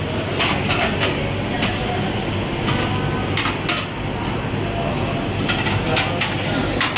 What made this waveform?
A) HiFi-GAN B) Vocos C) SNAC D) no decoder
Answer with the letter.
D